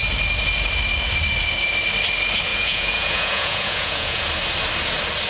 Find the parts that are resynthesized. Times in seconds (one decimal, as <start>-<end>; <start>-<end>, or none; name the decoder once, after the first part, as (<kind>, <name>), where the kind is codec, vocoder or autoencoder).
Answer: 2.5-4.2 (vocoder, Vocos)